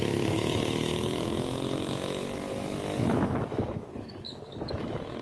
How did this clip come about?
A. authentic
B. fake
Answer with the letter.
B